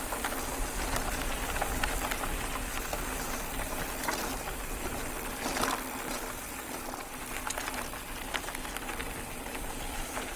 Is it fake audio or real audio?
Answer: real